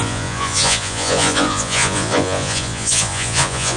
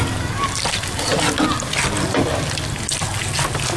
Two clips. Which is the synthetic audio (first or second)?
first